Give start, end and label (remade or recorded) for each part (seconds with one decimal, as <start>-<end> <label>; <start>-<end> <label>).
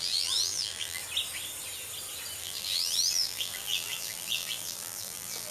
0.0-1.0 remade; 1.0-2.4 recorded; 2.4-5.5 remade